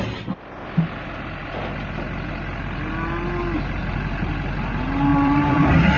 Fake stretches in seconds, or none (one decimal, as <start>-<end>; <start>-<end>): 5.1-6.0

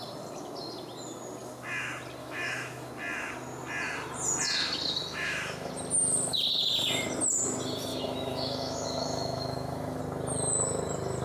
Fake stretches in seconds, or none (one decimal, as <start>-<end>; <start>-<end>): 2.2-2.9; 5.0-5.7; 7.9-10.0